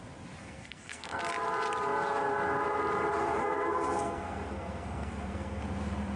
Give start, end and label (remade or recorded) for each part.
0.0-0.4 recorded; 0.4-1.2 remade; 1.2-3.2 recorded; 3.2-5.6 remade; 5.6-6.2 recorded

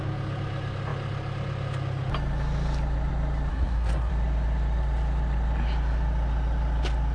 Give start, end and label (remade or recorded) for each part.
0.0-3.5 recorded; 3.5-4.1 remade; 4.1-7.1 recorded

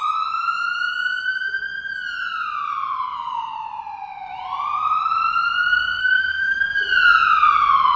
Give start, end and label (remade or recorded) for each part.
0.0-6.0 recorded; 6.0-6.6 remade; 6.6-8.0 recorded

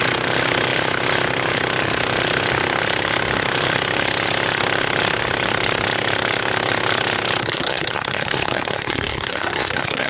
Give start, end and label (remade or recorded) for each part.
0.0-7.4 recorded; 7.4-10.1 remade

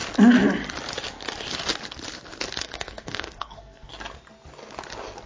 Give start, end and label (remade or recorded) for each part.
0.0-2.6 recorded; 2.6-3.9 remade; 3.9-5.3 recorded

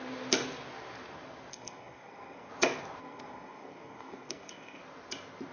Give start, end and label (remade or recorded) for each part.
0.0-1.5 recorded; 1.5-2.5 remade; 2.5-3.0 recorded; 3.0-4.8 remade; 4.8-5.5 recorded

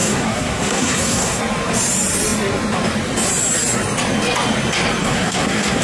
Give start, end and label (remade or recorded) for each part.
0.0-1.4 remade; 1.4-5.0 recorded; 5.0-5.8 remade

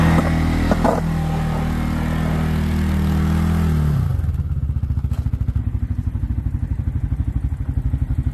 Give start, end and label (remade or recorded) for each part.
0.0-8.3 recorded